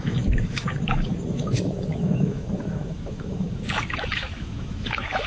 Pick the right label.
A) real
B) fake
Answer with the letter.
B